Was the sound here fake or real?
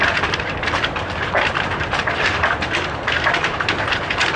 fake